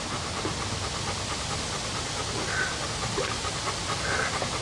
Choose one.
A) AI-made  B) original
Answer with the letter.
B